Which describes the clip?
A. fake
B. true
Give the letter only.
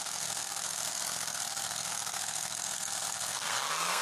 A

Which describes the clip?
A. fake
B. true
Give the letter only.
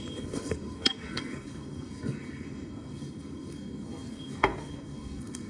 A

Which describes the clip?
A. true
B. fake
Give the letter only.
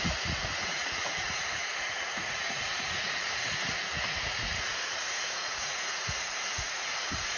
B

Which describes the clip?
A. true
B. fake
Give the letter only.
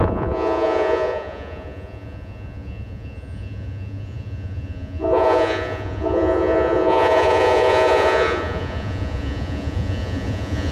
B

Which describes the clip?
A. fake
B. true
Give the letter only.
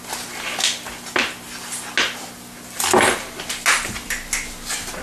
B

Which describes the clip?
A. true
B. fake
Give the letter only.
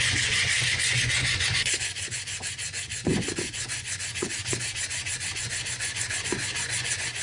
B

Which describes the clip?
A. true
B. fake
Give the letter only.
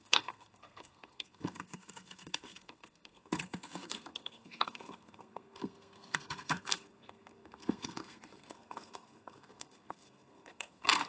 B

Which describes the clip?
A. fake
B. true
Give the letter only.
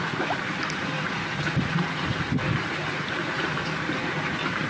B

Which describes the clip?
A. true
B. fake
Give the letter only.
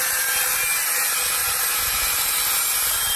A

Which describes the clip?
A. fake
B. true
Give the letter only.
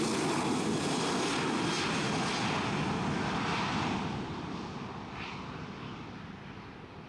B